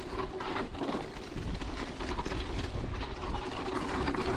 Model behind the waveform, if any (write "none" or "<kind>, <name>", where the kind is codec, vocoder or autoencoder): none